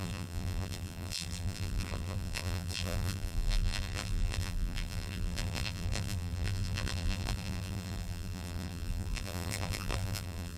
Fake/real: fake